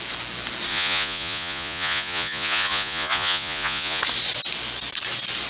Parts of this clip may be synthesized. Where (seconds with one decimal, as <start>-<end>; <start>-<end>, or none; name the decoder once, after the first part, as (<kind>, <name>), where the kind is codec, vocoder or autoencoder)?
0.7-4.0 (vocoder, Vocos)